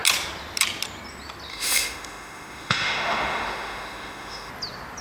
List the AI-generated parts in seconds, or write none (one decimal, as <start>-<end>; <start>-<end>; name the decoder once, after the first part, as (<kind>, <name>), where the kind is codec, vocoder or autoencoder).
1.5-4.5 (autoencoder, DAC-VAE)